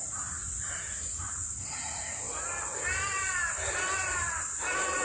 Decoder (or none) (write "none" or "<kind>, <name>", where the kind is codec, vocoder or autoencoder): vocoder, BigVGAN v2